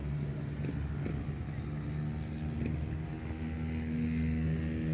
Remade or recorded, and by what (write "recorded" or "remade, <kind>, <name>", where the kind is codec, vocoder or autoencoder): recorded